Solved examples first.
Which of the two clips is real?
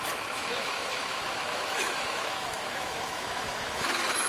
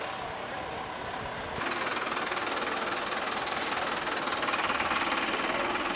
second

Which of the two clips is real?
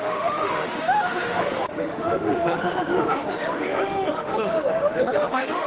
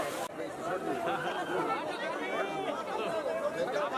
second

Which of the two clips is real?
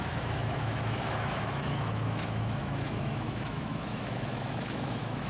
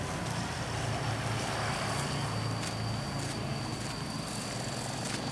second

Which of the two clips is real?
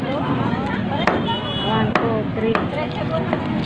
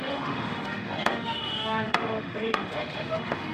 first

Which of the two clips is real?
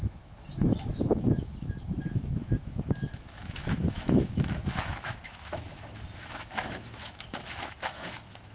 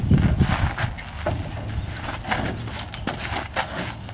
second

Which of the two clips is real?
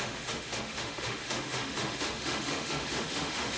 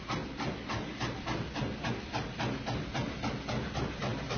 second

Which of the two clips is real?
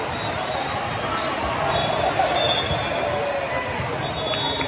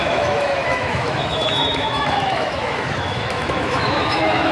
first